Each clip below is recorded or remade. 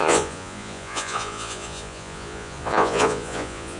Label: remade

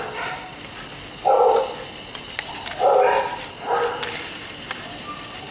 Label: recorded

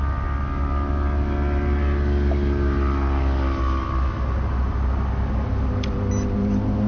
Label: recorded